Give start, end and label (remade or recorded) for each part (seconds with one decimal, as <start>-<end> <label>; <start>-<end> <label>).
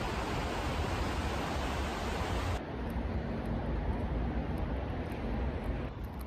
0.0-6.3 recorded